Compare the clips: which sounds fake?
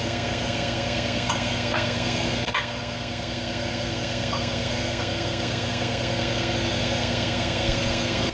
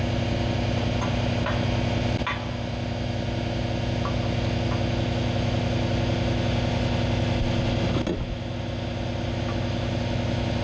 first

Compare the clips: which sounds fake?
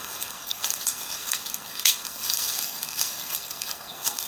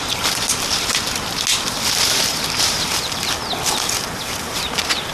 first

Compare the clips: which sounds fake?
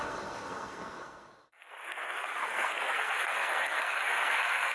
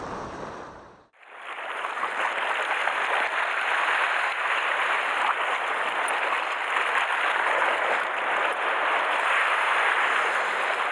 first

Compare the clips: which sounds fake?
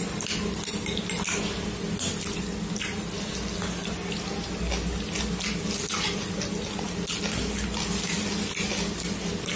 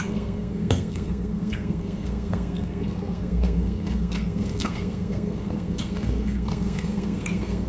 second